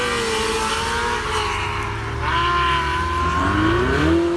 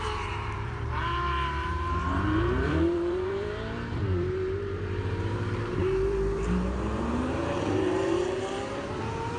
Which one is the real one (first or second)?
first